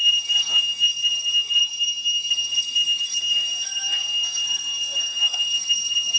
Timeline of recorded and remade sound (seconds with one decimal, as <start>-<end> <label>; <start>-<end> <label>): 0.0-1.6 remade; 1.6-2.3 recorded; 2.3-6.2 remade